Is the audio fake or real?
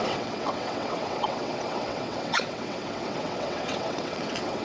fake